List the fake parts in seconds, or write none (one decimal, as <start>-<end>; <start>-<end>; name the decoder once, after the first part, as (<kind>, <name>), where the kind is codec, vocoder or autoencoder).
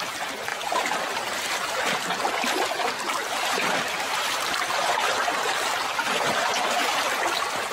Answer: 0.5-1.6 (vocoder, BigVGAN v2); 3.2-4.4; 6.8-7.7